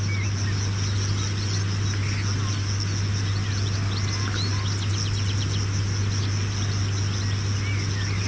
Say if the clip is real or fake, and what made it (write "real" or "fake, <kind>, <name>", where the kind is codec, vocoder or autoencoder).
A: real